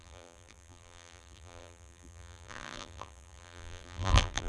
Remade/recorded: remade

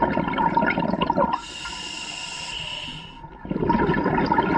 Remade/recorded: recorded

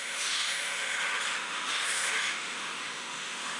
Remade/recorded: remade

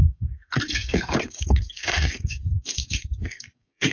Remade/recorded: remade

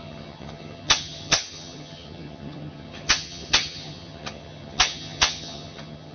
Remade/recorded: remade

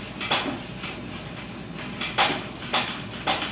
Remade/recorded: recorded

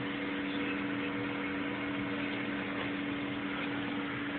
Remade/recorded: recorded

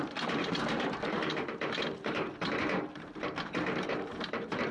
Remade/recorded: remade